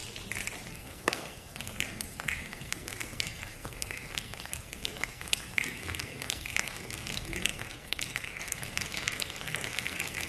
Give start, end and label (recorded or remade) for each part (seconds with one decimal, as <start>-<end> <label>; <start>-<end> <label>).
0.0-0.7 recorded; 0.7-10.3 remade